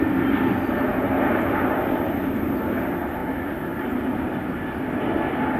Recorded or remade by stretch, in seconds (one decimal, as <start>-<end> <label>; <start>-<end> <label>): 0.0-5.6 recorded